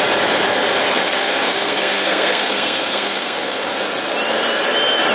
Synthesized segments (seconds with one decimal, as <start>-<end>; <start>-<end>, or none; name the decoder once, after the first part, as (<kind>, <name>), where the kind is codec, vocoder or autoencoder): 1.2-3.7 (codec, SNAC)